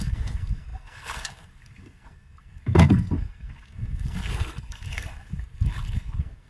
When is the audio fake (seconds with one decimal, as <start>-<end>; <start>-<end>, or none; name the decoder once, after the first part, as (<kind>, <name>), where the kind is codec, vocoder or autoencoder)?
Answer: 0.0-6.5 (codec, SNAC)